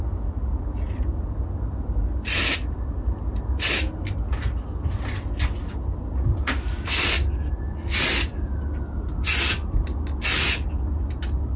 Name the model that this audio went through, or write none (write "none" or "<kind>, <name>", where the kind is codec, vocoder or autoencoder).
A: none